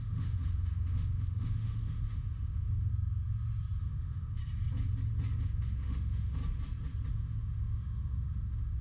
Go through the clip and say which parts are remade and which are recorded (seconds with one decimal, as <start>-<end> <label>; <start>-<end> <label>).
0.0-2.9 remade; 2.9-3.8 recorded; 3.8-4.4 remade; 4.4-5.4 recorded; 5.4-6.4 remade; 6.4-7.1 recorded; 7.1-8.8 remade

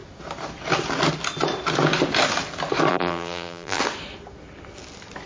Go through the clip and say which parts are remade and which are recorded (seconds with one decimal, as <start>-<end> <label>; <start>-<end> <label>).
0.0-2.9 recorded; 2.9-3.8 remade; 3.8-5.3 recorded